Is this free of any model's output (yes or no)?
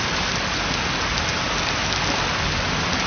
yes